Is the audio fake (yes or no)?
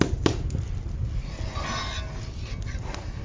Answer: no